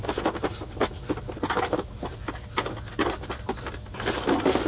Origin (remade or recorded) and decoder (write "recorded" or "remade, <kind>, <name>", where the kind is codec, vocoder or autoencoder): recorded